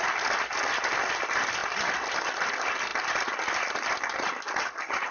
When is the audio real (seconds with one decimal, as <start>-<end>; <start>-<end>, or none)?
0.0-5.1